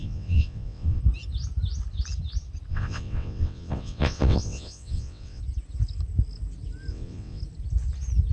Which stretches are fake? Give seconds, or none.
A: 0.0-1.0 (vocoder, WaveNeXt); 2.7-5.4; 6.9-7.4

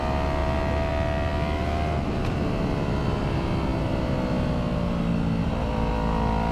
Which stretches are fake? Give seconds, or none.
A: 0.4-0.9 (vocoder, BigVGAN v2)

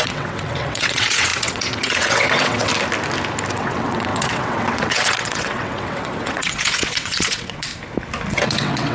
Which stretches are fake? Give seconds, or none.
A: 0.0-2.7 (vocoder, WaveNeXt); 3.5-7.7; 8.3-8.9

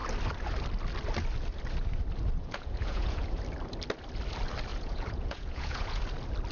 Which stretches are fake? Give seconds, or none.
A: 2.4-3.4 (vocoder, Vocos); 4.7-6.0